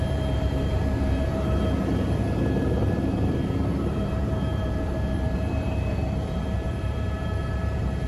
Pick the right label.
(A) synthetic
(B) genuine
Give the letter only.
A